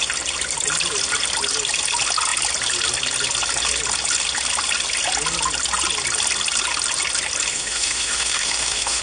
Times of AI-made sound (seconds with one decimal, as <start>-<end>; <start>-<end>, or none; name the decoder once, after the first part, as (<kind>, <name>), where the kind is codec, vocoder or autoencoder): 7.5-9.0 (autoencoder, DAC-VAE)